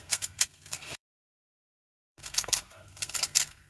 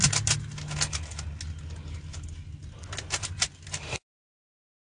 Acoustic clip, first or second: second